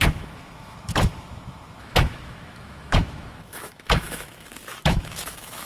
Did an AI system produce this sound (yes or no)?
yes